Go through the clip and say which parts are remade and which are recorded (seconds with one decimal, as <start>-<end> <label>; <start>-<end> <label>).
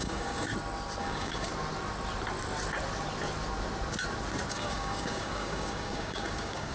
0.0-0.5 remade; 0.5-1.0 recorded; 1.0-1.5 remade; 1.5-4.5 recorded; 4.5-6.7 remade